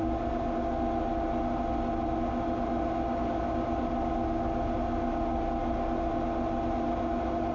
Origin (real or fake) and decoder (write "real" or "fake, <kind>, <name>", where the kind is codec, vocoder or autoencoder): real